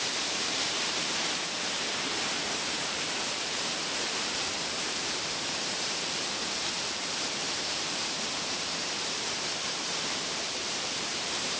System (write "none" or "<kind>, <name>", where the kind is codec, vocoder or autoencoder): vocoder, BigVGAN v2